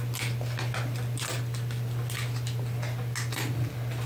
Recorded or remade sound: recorded